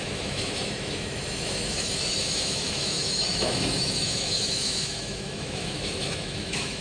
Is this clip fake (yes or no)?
yes